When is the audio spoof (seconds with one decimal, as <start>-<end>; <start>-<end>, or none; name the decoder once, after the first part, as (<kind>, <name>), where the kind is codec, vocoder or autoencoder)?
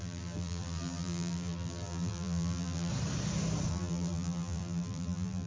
0.0-2.9 (vocoder, BigVGAN v2); 3.7-5.5